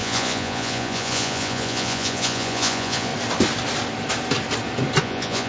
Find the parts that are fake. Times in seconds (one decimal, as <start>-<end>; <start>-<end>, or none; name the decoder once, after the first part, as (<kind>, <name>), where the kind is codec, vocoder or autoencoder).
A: 0.0-3.1 (vocoder, Vocos); 5.0-5.5